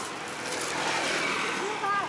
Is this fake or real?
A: real